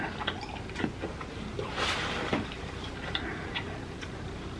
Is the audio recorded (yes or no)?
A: no